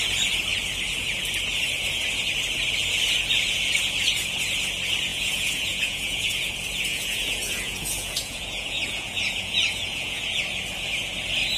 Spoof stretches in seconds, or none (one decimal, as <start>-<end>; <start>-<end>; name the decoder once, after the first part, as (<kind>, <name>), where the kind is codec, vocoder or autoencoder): 5.1-6.5 (vocoder, Vocos); 6.9-10.4

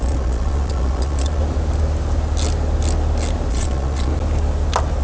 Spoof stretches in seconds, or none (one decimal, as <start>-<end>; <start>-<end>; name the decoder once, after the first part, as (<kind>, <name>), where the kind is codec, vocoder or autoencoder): 0.0-1.4 (vocoder, Vocos); 3.5-4.1